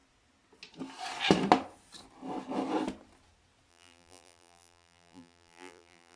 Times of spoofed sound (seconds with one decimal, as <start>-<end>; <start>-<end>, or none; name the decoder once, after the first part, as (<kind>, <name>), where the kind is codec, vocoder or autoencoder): 3.7-6.2 (vocoder, BigVGAN v2)